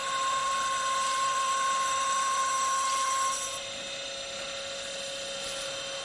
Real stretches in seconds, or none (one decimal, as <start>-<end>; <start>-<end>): 3.6-6.0